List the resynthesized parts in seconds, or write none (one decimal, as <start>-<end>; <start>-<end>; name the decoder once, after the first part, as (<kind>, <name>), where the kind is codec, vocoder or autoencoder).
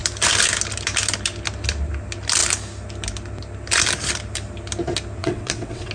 5.2-5.9 (vocoder, WaveNeXt)